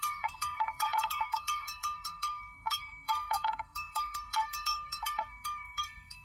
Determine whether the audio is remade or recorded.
remade